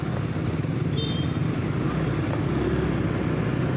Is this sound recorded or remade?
recorded